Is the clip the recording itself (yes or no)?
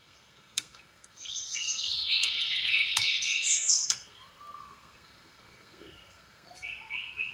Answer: no